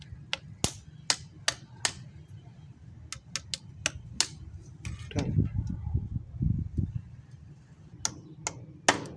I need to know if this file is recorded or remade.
recorded